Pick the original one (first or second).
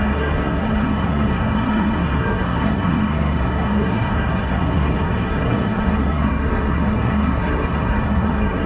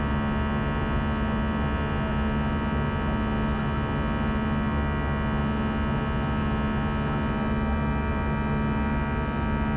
second